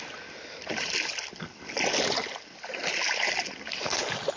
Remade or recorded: recorded